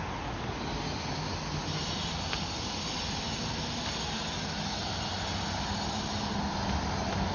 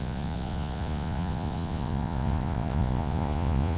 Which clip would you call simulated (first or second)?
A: second